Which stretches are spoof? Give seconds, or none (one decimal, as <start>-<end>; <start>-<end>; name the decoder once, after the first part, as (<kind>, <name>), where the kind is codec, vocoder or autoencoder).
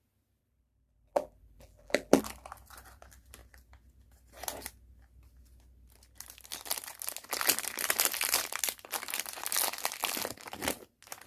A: 0.4-2.2 (vocoder, BigVGAN v2)